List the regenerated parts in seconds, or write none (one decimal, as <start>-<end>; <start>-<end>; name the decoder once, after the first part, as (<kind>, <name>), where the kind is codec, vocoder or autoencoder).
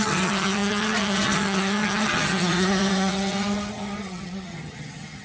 0.0-5.2 (vocoder, HiFi-GAN)